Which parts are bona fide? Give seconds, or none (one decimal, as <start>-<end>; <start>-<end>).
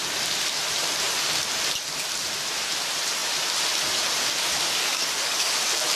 0.0-4.8; 5.5-6.0